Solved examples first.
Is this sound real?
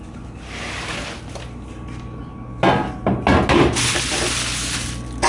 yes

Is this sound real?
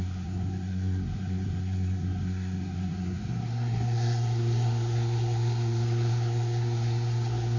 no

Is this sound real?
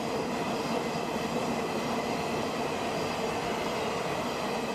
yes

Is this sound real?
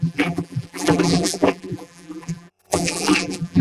no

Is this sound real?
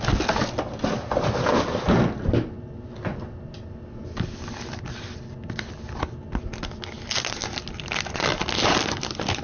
yes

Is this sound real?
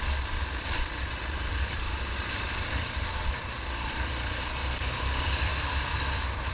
yes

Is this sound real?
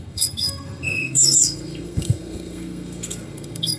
no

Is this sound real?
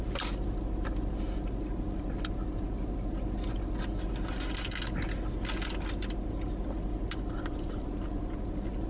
yes